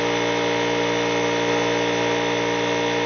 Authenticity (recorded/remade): recorded